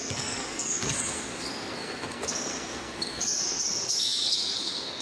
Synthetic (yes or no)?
yes